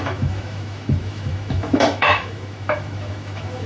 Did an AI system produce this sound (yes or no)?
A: yes